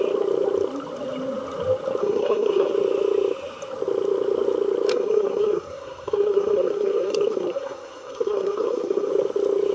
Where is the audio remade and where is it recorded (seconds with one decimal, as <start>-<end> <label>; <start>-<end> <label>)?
0.0-2.0 recorded; 2.0-2.7 remade; 2.7-4.9 recorded; 4.9-9.1 remade; 9.1-9.7 recorded

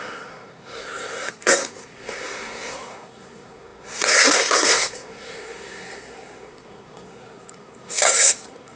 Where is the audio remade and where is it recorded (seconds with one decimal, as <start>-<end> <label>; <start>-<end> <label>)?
0.0-8.8 remade